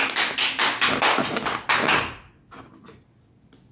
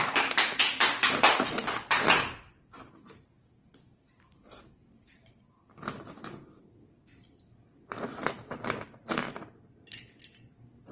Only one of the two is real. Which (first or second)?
first